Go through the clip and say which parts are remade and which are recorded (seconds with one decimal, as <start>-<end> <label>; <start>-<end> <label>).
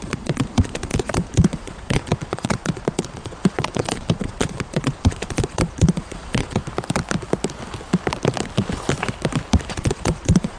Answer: 0.0-6.6 remade; 6.6-9.7 recorded; 9.7-10.6 remade